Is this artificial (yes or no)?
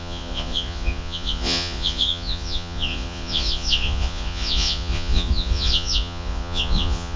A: yes